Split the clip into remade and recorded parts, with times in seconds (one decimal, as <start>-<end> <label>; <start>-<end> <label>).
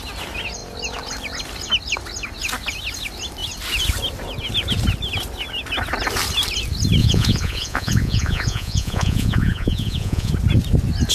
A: 0.0-7.0 recorded; 7.0-10.3 remade; 10.3-11.1 recorded